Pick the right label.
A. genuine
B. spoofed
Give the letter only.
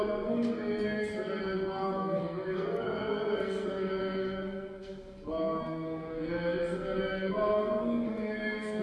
B